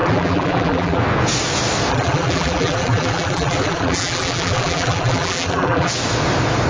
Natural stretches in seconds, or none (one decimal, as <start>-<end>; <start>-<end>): 1.0-1.9; 5.9-6.7

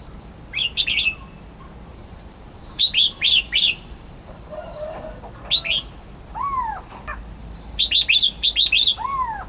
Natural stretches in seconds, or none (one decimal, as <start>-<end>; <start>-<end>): 0.0-1.9; 5.2-7.4; 8.0-9.5

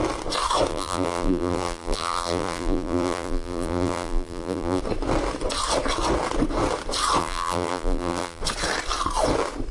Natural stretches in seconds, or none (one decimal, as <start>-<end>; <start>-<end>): 0.0-0.7; 4.8-7.2; 8.4-9.7

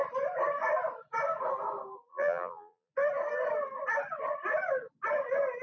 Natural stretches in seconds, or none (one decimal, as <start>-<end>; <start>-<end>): 0.0-2.1; 2.9-5.6

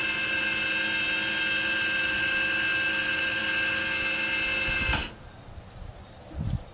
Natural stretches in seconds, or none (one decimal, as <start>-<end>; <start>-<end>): 0.0-1.7; 2.3-2.7; 3.4-6.7

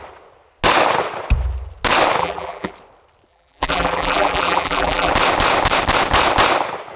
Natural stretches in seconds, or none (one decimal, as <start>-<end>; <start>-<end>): 0.0-2.2; 2.7-3.3; 5.1-7.0

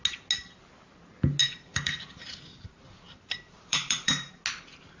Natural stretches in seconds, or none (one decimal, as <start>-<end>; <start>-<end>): 0.0-1.4; 4.4-5.0